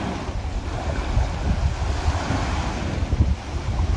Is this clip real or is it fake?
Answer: real